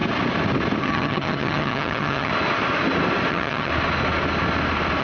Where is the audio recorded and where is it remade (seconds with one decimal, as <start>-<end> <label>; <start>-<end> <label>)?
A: 0.0-0.8 recorded; 0.8-2.3 remade; 2.3-3.3 recorded; 3.3-3.7 remade; 3.7-5.0 recorded